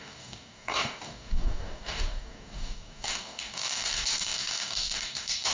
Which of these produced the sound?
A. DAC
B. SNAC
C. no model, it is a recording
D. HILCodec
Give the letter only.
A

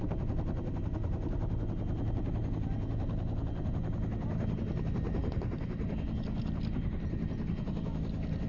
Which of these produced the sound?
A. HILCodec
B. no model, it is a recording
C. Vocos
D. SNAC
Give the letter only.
B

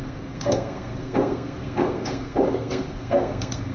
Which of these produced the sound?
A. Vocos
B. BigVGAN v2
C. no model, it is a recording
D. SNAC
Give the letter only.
D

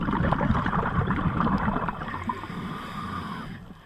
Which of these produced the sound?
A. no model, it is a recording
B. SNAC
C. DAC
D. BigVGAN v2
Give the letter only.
D